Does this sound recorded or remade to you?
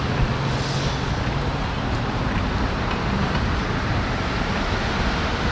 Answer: recorded